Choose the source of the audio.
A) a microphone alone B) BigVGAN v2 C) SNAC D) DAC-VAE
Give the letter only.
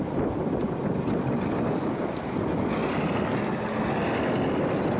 A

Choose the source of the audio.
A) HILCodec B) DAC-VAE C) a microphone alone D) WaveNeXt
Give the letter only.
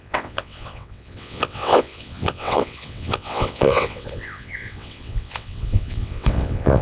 D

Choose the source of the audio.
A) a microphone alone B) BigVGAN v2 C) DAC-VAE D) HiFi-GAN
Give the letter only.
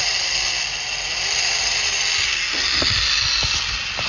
A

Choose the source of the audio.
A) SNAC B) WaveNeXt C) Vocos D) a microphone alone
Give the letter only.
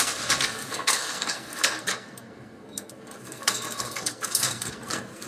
A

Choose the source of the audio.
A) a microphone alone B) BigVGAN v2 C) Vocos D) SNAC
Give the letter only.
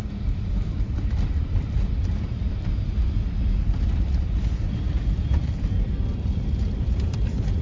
B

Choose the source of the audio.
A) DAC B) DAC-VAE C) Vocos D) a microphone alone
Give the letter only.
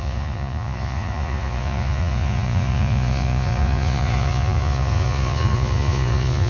C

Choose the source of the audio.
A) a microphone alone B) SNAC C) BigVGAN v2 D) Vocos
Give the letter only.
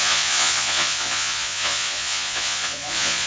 D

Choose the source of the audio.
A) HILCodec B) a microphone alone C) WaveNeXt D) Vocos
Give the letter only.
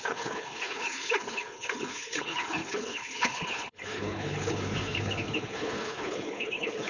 A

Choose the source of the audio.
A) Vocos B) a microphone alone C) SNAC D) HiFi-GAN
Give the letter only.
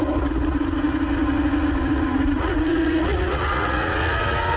A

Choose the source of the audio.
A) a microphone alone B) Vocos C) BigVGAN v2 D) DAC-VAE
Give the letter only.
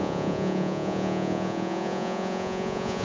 B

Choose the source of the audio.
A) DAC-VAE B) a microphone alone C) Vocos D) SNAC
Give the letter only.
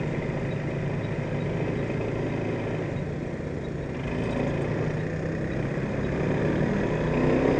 B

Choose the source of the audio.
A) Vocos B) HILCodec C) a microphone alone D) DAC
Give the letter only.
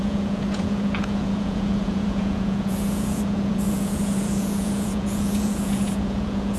A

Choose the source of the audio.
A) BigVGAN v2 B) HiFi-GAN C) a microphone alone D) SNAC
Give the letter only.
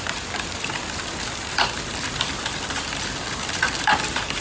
C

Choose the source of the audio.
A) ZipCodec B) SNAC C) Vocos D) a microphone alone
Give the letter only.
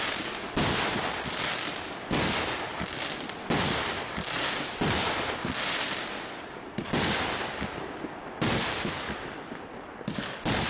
D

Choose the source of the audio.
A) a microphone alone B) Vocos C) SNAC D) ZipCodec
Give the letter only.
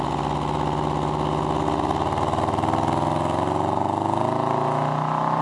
A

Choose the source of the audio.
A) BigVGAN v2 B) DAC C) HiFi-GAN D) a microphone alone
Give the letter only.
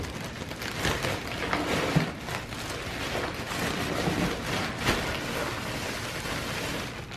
D